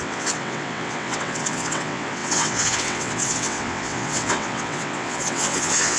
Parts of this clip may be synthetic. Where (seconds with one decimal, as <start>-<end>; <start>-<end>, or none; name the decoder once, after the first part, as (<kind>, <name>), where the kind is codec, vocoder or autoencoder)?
0.0-6.0 (vocoder, WaveNeXt)